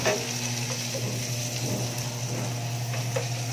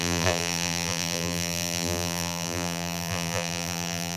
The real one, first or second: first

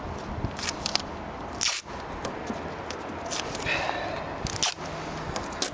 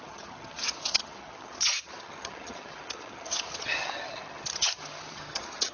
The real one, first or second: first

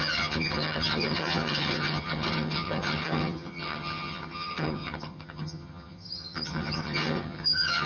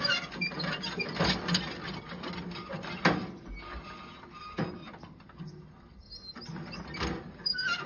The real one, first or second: second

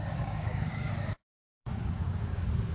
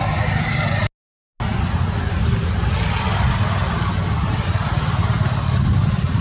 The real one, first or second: second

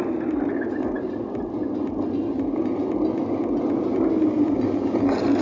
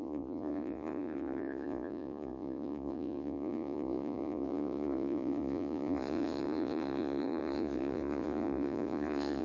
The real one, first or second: first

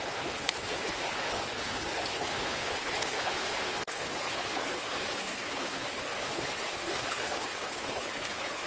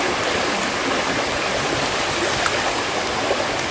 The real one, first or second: second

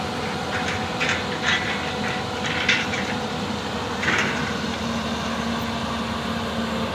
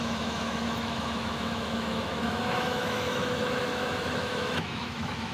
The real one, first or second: first